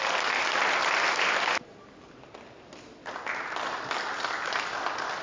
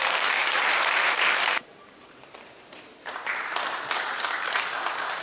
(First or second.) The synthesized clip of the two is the second